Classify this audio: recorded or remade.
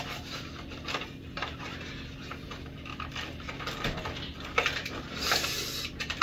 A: recorded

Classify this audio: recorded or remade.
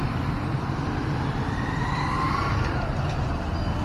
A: recorded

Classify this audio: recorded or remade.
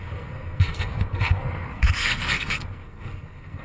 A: remade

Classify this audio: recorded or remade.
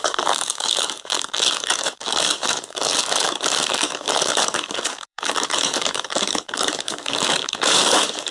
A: remade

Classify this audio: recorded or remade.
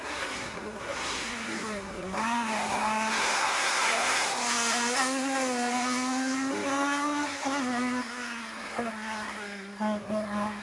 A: remade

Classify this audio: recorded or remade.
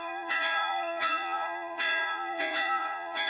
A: remade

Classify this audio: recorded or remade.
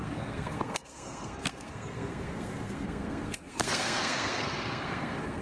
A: remade